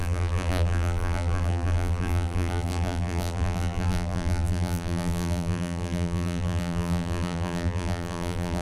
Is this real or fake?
fake